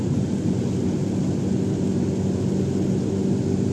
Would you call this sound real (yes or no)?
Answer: yes